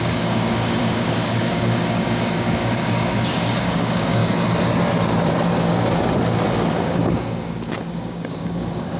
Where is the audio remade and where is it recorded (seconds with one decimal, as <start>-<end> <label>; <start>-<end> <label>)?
0.0-4.2 remade; 4.2-6.7 recorded; 6.7-9.0 remade